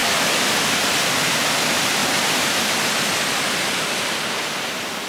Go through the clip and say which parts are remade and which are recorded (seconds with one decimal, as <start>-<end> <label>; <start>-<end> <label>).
0.0-2.0 recorded; 2.0-2.7 remade; 2.7-5.1 recorded